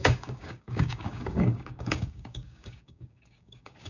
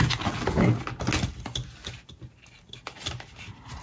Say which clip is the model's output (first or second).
first